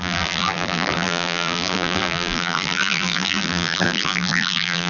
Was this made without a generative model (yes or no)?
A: no